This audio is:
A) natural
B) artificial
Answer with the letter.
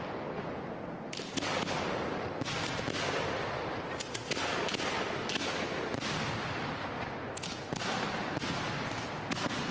A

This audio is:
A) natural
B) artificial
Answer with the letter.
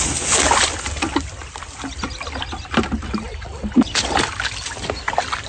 A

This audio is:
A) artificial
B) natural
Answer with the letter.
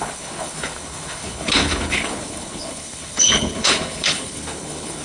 A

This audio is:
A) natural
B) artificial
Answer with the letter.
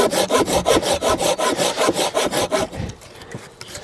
A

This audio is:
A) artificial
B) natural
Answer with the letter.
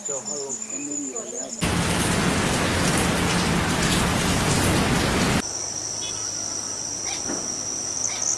B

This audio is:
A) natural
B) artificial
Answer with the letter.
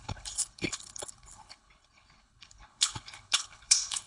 B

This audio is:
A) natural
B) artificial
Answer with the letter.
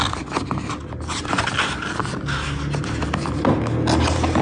A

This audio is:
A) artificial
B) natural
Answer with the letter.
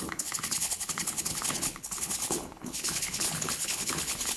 A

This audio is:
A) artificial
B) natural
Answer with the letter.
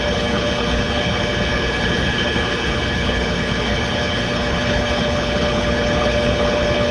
A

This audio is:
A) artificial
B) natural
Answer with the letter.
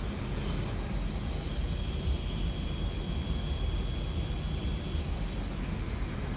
B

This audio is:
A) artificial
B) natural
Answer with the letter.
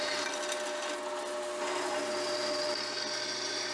B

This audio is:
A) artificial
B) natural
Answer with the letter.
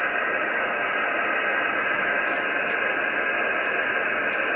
B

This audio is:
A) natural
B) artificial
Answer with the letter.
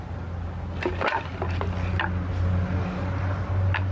A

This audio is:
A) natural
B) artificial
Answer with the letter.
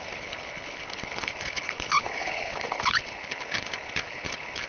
B